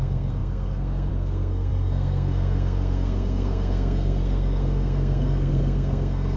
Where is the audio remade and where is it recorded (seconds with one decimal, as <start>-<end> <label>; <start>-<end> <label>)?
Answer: 0.0-6.4 remade